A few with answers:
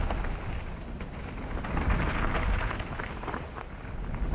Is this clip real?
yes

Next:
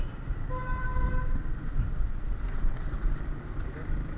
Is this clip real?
no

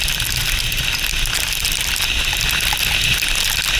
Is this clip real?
yes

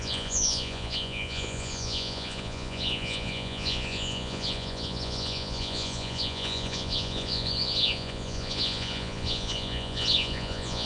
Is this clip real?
no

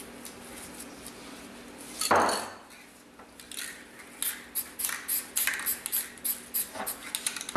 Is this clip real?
yes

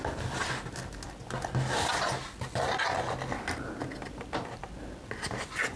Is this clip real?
yes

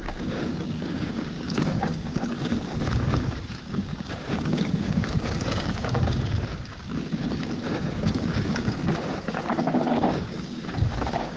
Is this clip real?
no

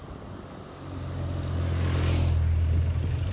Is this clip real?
yes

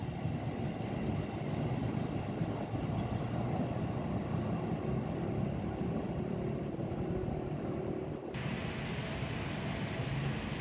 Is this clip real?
yes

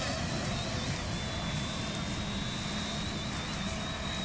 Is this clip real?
yes